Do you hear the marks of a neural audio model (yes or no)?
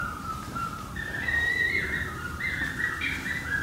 yes